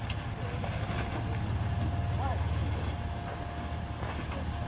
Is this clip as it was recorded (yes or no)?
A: yes